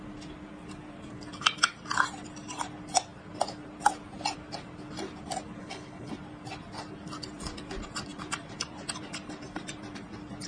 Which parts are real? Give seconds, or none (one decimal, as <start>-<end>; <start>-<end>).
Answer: 0.0-5.6; 6.1-10.5

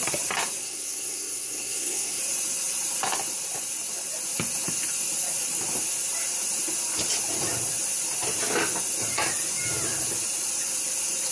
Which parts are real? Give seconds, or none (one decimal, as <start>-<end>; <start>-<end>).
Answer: 0.0-0.6; 2.2-11.3

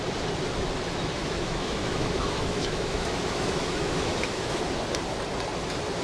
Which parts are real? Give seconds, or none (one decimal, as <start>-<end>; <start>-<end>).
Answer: 0.0-1.0; 4.6-6.0